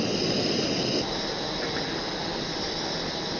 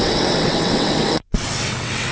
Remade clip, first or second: second